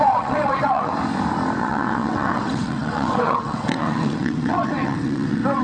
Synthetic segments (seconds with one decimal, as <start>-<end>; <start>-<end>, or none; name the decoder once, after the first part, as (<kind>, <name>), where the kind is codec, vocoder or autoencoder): 0.0-0.9 (vocoder, WaveNeXt); 1.6-5.6